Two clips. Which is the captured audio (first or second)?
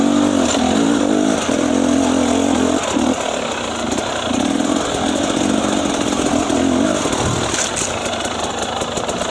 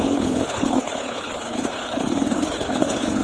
first